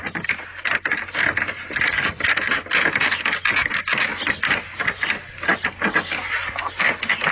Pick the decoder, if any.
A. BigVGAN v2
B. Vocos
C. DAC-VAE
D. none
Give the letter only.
D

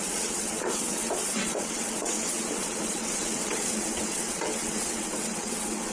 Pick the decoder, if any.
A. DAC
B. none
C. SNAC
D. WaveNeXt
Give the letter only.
D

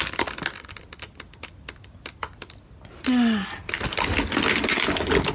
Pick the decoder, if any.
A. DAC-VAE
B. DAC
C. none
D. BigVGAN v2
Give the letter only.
C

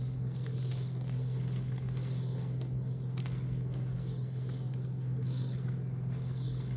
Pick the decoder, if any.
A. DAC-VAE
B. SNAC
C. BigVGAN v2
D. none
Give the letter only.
B